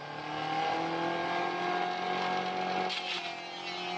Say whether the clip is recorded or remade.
recorded